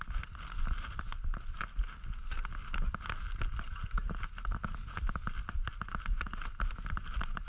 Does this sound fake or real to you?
real